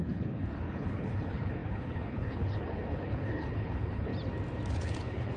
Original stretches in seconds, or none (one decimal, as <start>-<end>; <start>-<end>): 4.1-4.7